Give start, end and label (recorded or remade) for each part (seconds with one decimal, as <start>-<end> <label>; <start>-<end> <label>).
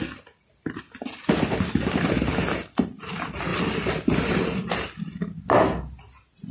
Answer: 0.0-6.5 recorded